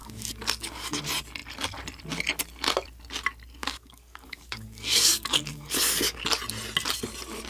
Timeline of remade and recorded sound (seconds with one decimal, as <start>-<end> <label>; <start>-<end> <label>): 0.0-1.0 remade; 1.0-3.6 recorded; 3.6-6.2 remade; 6.2-7.5 recorded